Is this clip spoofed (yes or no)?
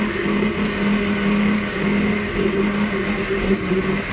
no